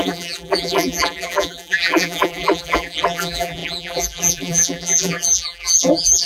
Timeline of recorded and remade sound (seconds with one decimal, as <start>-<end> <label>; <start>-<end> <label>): 0.0-6.3 remade